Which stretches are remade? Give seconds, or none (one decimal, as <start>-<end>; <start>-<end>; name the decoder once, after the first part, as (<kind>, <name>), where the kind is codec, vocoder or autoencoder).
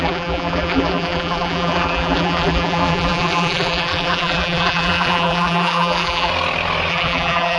0.0-6.3 (vocoder, BigVGAN v2); 6.9-7.6